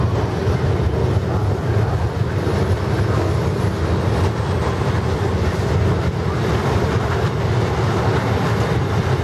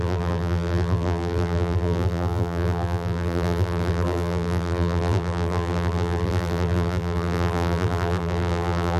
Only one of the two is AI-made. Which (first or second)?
second